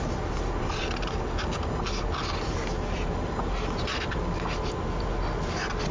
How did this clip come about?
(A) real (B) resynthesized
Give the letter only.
A